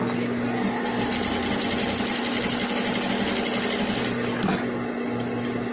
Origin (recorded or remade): recorded